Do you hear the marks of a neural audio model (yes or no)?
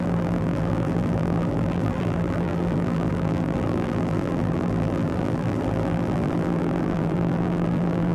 yes